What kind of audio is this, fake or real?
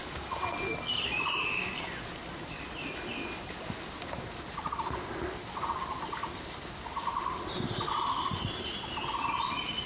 real